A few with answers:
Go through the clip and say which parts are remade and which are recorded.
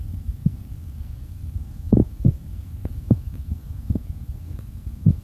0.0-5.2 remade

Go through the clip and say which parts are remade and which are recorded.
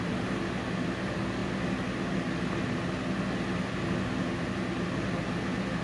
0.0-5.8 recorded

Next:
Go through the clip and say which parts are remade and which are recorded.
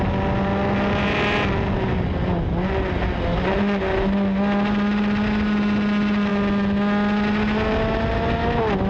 0.0-8.9 recorded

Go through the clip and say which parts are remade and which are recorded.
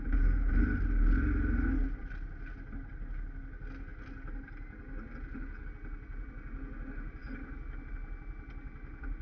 0.0-9.2 recorded